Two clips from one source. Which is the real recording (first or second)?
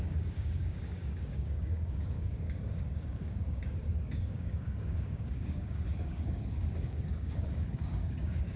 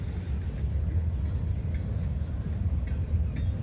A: second